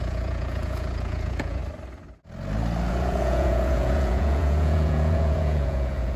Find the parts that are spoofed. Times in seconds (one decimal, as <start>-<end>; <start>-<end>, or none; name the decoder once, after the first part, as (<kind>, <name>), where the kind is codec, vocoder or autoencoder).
0.0-1.6 (vocoder, Vocos); 2.9-6.2